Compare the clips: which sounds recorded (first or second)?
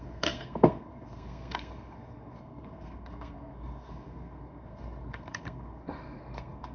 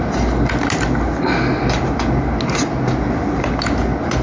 second